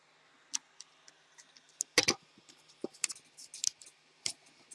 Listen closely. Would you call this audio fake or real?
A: real